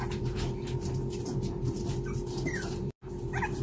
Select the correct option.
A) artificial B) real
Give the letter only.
A